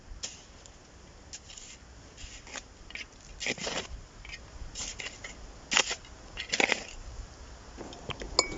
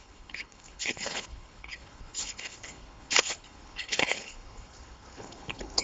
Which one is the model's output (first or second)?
second